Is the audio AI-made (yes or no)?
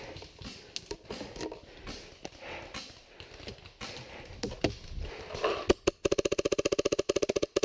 no